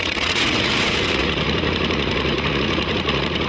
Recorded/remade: remade